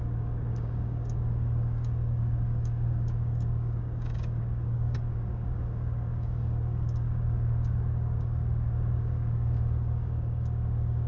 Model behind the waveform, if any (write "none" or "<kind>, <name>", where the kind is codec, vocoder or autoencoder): codec, DAC